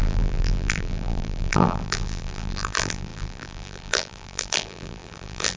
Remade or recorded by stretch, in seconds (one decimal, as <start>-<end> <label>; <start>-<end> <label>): 0.0-5.6 remade